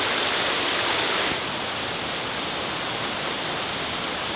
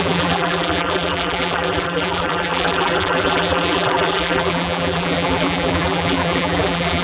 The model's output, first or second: second